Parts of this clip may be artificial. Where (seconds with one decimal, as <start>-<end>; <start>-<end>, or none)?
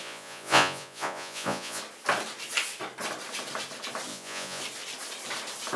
0.0-1.8; 4.1-4.6